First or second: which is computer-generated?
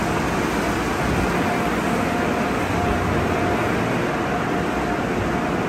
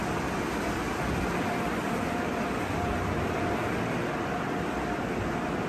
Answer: second